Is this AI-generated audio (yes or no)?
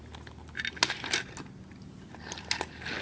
no